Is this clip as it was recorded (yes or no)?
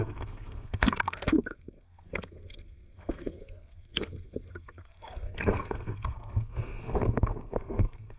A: no